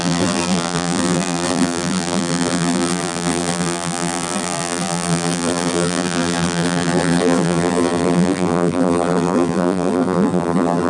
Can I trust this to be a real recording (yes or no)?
no